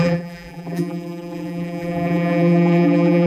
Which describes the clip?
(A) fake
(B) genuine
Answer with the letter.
A